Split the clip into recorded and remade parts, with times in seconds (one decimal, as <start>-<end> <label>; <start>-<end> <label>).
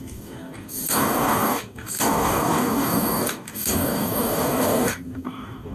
0.0-5.7 remade